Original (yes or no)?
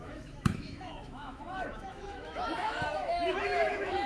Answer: no